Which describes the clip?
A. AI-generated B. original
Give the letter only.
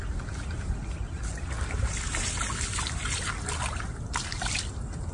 B